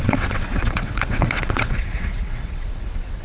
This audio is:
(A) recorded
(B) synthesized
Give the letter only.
B